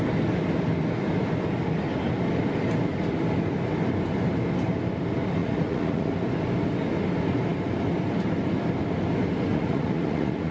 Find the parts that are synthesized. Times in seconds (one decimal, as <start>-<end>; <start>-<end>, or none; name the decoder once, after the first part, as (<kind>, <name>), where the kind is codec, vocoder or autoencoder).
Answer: 5.4-6.1 (vocoder, Vocos); 9.5-10.5